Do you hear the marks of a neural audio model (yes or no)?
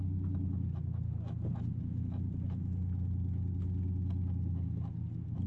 no